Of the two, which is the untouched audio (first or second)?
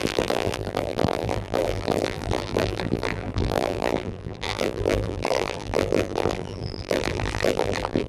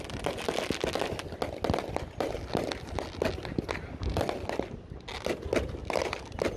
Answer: second